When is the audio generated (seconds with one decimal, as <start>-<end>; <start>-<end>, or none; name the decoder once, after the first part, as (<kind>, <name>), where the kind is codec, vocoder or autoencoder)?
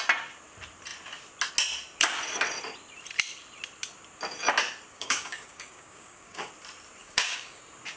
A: 4.9-6.5 (codec, DAC); 7.0-7.6